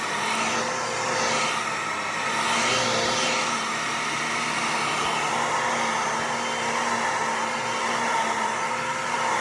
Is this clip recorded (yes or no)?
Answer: yes